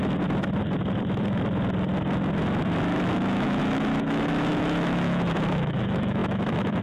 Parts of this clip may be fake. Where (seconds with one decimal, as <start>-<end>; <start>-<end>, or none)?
3.1-6.8